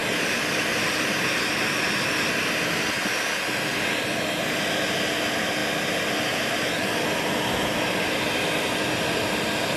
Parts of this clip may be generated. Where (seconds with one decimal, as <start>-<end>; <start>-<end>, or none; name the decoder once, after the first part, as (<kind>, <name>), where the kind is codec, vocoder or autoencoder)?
0.0-0.9 (vocoder, BigVGAN v2)